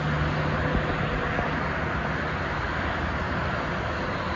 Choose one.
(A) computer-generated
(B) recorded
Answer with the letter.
B